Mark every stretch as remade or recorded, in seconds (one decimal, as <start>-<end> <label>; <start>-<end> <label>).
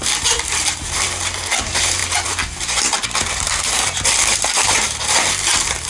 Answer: 0.0-5.9 remade